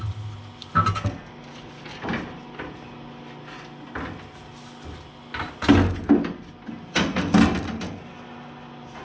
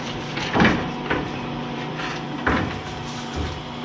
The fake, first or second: second